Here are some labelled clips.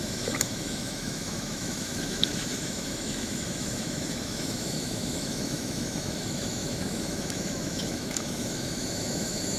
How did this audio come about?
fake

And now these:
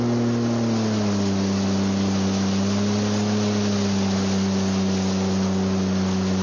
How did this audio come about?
real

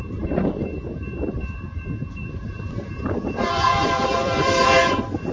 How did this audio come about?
fake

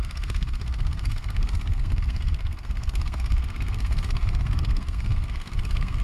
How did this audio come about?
fake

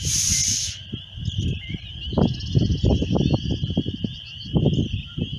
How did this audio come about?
real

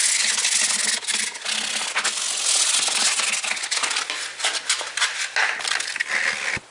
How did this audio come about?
real